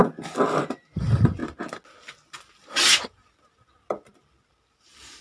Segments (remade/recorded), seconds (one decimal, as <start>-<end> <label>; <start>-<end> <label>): 0.0-0.9 recorded; 0.9-1.4 remade; 1.4-4.5 recorded; 4.5-5.2 remade